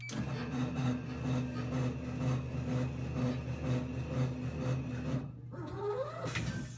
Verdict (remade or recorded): recorded